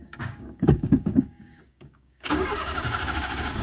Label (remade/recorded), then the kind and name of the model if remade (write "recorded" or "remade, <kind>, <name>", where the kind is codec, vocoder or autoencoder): remade, codec, DAC